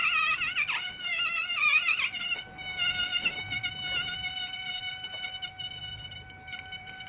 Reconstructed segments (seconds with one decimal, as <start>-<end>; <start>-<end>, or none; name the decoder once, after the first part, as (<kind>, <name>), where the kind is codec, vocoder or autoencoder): 4.0-7.1 (vocoder, BigVGAN v2)